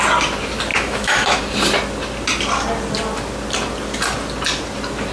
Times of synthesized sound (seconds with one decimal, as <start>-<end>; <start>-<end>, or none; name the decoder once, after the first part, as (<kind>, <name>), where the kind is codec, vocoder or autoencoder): 0.7-1.4 (autoencoder, DAC-VAE)